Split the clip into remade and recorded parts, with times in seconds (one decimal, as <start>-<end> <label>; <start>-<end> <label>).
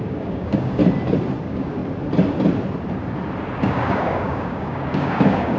0.0-0.8 remade; 0.8-1.4 recorded; 1.4-1.8 remade; 1.8-3.6 recorded; 3.6-5.6 remade